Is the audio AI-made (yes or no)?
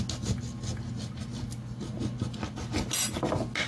no